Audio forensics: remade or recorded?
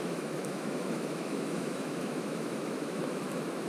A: remade